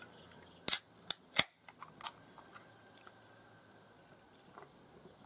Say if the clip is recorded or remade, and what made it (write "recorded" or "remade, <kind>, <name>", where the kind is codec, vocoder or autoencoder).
recorded